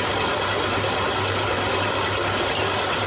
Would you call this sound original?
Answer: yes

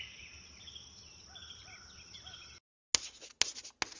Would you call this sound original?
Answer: yes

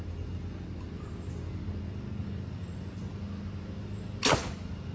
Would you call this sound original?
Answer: yes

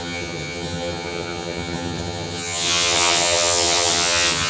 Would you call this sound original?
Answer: no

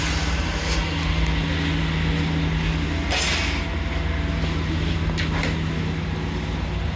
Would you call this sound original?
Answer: yes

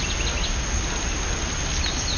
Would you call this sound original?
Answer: yes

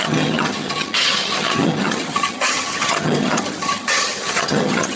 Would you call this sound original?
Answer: no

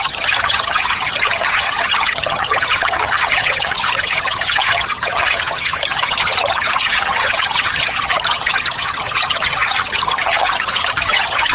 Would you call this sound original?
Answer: no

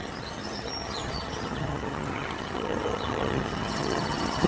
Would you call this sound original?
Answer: no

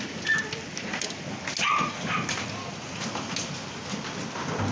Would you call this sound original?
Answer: yes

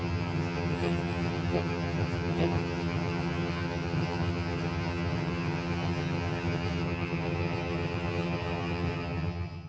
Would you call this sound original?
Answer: no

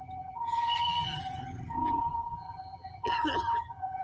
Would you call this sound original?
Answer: no